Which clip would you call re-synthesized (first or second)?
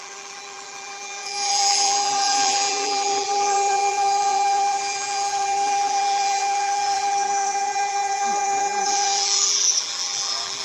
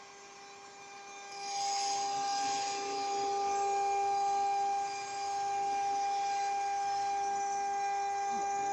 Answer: first